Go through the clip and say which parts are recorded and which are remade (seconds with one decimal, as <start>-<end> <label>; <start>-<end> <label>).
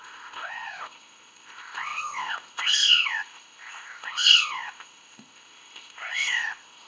0.0-6.9 remade